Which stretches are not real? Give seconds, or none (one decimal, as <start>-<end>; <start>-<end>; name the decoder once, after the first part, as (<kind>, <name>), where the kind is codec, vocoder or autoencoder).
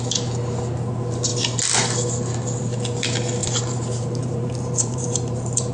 3.4-5.7 (vocoder, BigVGAN v2)